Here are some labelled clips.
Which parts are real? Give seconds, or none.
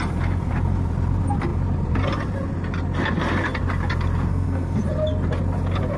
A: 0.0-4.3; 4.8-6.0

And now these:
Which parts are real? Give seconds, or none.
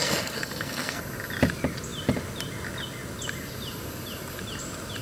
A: 1.0-5.0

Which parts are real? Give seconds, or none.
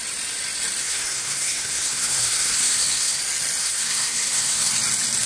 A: 0.0-0.8; 3.2-3.6; 4.7-5.3